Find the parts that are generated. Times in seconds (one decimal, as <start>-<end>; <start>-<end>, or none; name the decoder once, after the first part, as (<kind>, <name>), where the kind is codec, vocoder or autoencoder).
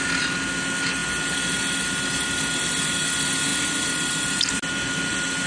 none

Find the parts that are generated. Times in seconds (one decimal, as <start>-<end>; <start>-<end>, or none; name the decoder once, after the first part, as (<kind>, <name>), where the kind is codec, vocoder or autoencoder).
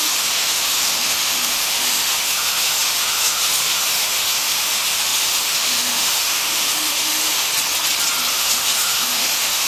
0.0-7.5 (autoencoder, DAC-VAE); 8.3-9.7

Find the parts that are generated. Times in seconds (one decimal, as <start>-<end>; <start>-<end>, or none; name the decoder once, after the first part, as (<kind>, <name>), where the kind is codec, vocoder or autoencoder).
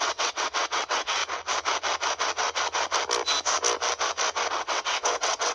0.0-1.2 (vocoder, WaveNeXt); 4.5-5.5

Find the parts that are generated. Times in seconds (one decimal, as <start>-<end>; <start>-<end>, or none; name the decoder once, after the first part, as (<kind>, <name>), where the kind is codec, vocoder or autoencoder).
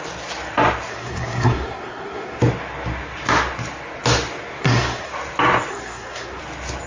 0.9-2.4 (codec, SNAC); 4.6-5.1; 5.7-6.4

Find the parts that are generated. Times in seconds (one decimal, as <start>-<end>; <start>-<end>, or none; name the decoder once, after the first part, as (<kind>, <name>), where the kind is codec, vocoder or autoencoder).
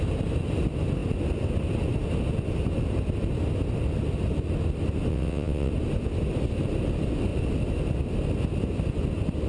5.1-5.7 (vocoder, WaveNeXt)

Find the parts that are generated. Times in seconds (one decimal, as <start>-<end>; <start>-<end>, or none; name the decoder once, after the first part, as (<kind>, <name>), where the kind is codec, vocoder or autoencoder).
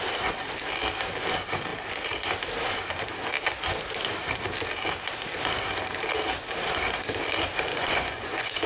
7.7-8.7 (vocoder, Vocos)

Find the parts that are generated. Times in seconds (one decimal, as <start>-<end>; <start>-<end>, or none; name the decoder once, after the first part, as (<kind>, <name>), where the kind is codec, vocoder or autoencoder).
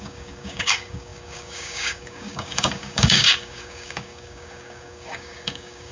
0.0-5.9 (codec, DAC)